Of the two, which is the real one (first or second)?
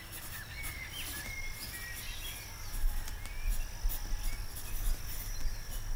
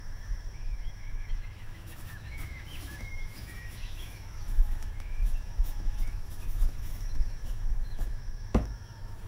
first